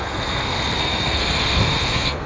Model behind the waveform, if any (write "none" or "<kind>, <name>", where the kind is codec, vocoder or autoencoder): codec, SNAC